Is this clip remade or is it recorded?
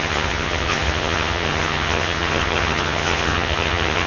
remade